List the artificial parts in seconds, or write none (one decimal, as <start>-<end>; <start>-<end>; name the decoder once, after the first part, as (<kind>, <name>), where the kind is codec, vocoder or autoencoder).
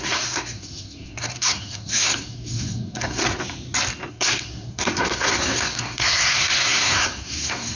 0.0-3.2 (codec, SNAC); 4.1-7.8